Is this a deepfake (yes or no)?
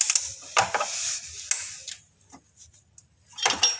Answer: no